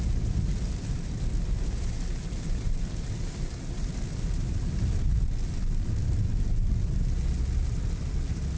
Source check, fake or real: real